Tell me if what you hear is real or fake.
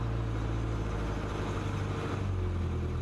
real